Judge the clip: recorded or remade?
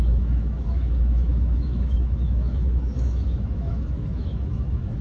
remade